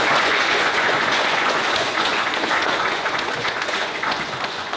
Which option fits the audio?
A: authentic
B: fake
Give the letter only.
B